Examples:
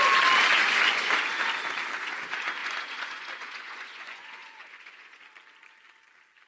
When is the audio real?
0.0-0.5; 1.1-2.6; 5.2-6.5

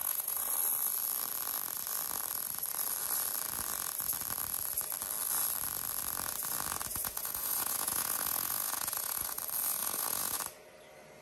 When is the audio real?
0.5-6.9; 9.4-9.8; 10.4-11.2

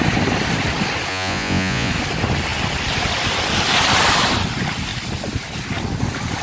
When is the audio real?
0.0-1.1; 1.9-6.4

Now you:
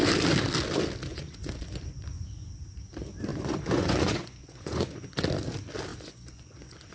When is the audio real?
0.0-1.1; 2.5-3.3; 5.1-5.9